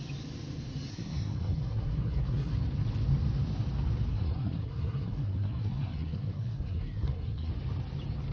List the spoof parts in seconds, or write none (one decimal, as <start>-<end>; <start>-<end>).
0.9-2.5; 4.1-7.5